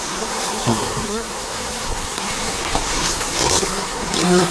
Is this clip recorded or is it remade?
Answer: remade